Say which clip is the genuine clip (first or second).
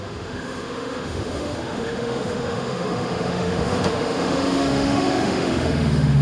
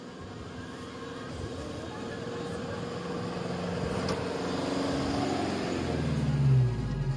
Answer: second